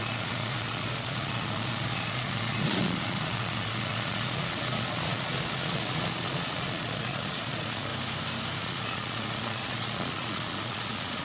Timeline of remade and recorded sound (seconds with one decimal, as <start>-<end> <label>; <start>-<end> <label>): 0.0-7.9 remade; 7.9-8.6 recorded; 8.6-11.2 remade